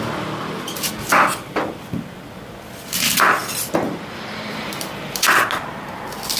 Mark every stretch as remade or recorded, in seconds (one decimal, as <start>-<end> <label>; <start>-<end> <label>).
0.0-3.4 recorded; 3.4-5.4 remade; 5.4-6.4 recorded